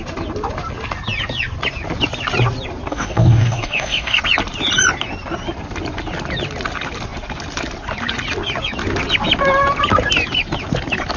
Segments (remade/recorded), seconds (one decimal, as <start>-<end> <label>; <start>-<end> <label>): 0.0-2.9 recorded; 2.9-4.2 remade; 4.2-11.2 recorded